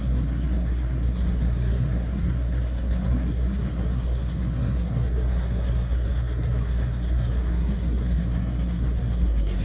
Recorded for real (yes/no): no